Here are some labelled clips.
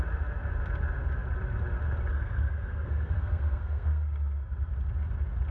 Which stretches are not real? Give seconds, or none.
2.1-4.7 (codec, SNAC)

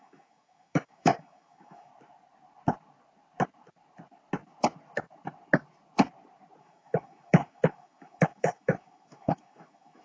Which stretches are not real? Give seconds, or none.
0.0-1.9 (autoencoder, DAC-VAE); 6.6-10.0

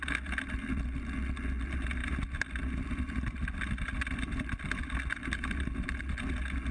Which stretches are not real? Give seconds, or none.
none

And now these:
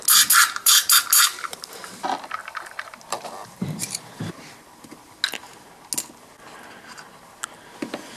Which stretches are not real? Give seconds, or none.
0.6-1.8 (vocoder, BigVGAN v2); 2.4-5.2

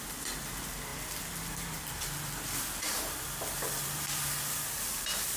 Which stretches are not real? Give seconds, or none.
0.0-5.4 (vocoder, BigVGAN v2)

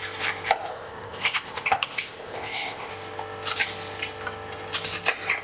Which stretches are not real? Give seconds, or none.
0.7-2.9 (codec, ZipCodec)